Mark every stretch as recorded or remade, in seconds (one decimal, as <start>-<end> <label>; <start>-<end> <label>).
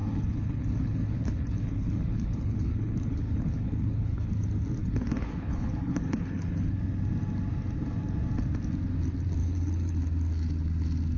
0.0-4.3 remade; 4.3-4.8 recorded; 4.8-6.8 remade; 6.8-9.4 recorded; 9.4-10.0 remade; 10.0-11.2 recorded